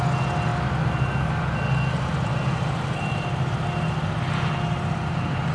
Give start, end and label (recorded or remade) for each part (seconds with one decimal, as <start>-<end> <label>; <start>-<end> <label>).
0.0-5.5 recorded